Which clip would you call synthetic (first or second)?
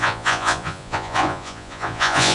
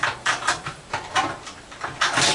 first